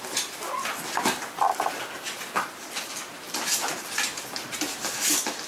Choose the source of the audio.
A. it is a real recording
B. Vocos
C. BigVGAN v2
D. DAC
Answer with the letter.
A